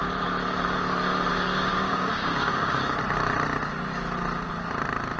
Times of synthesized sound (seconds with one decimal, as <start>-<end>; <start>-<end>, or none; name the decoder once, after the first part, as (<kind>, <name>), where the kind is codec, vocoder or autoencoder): 1.3-3.0 (codec, DAC)